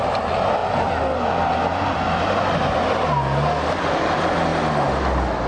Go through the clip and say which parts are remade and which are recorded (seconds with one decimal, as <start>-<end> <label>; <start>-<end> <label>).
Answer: 0.0-5.5 recorded